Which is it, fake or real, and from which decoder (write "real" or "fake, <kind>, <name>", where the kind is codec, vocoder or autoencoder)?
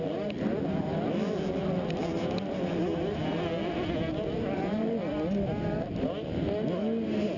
real